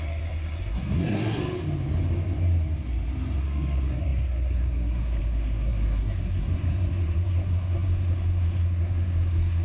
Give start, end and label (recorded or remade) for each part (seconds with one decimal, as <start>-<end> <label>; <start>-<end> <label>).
0.0-1.4 remade; 1.4-3.4 recorded; 3.4-9.6 remade